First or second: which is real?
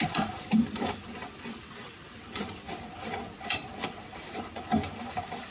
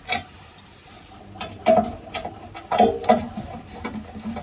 second